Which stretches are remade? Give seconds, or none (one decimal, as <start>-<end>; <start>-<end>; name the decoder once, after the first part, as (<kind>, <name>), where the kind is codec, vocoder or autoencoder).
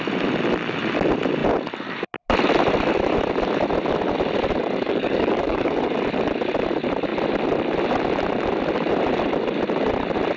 4.6-5.8 (codec, DAC)